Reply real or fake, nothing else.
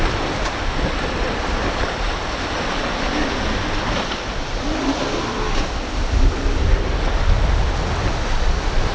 fake